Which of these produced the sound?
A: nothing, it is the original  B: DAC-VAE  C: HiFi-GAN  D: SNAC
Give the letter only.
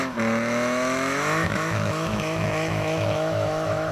B